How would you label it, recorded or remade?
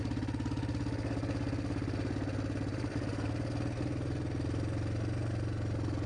recorded